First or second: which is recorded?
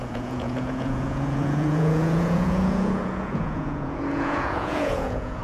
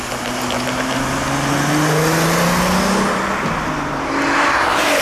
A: second